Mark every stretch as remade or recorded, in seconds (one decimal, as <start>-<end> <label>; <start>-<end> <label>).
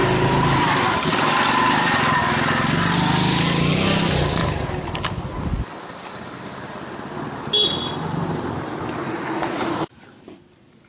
0.0-9.0 recorded; 9.0-10.0 remade; 10.0-10.9 recorded